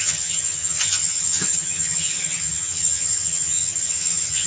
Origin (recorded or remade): remade